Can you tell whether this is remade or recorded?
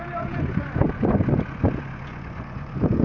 remade